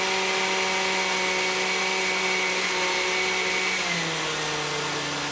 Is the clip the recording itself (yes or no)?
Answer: yes